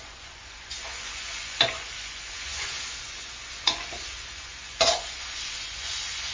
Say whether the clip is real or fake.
fake